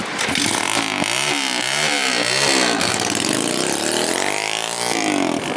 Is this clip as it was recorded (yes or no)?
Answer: yes